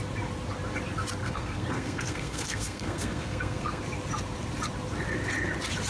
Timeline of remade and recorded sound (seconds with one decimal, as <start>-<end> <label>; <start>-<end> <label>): 0.0-1.2 recorded; 1.2-3.8 remade; 3.8-5.9 recorded